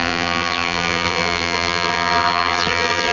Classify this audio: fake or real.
fake